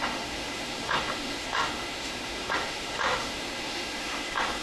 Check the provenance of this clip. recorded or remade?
remade